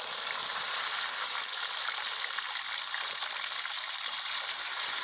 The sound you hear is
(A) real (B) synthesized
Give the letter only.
A